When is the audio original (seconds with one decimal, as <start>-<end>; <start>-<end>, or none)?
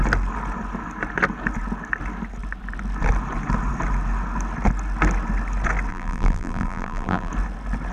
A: 0.0-5.9; 7.3-7.9